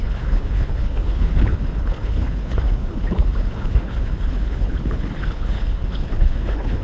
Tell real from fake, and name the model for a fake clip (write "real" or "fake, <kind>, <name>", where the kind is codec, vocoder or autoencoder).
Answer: fake, codec, HILCodec